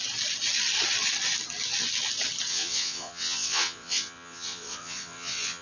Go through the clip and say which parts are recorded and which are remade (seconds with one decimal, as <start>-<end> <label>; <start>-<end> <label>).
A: 0.0-2.5 recorded; 2.5-5.6 remade